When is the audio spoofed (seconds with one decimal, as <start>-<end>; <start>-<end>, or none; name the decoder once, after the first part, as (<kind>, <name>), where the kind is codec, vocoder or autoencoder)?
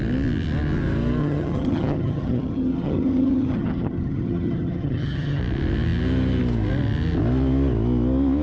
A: 1.2-5.4 (vocoder, HiFi-GAN)